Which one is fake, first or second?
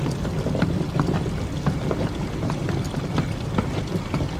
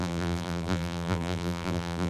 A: second